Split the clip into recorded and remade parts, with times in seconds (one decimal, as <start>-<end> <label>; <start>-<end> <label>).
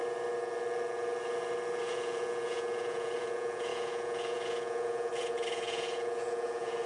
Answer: 0.0-1.8 recorded; 1.8-6.9 remade